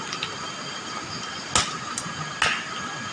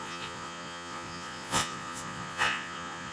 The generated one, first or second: second